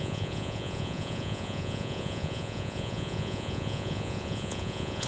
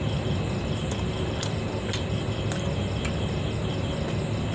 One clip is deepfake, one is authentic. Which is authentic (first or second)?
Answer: second